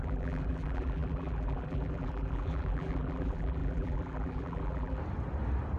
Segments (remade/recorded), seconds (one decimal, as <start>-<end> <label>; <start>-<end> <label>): 0.0-5.0 remade; 5.0-5.8 recorded